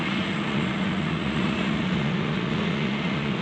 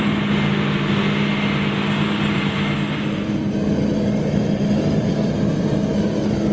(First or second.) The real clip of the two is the second